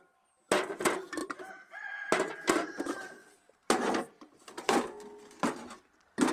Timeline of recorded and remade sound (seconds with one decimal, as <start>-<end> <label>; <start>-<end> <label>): 0.0-1.2 recorded; 1.2-2.3 remade; 2.3-3.2 recorded; 3.2-4.5 remade; 4.5-6.3 recorded